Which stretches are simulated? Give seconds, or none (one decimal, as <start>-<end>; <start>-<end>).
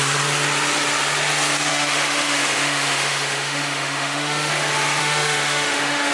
1.7-4.5; 5.0-6.1